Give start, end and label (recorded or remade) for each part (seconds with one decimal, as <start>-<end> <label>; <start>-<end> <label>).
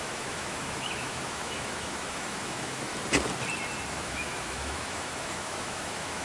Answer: 0.0-2.9 remade; 2.9-3.9 recorded; 3.9-6.2 remade